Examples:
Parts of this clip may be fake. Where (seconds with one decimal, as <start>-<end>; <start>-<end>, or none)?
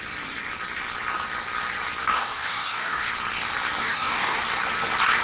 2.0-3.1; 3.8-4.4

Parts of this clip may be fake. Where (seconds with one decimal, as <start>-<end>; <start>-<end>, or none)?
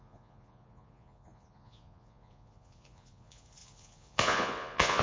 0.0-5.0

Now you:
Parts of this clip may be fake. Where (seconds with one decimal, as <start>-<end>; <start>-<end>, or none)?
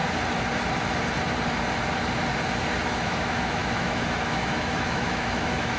2.9-5.8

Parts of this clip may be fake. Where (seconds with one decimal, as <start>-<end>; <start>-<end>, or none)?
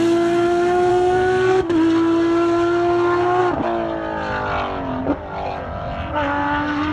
0.9-1.6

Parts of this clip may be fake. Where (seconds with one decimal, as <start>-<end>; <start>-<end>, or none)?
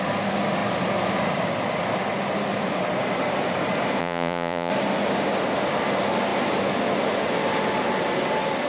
4.0-4.7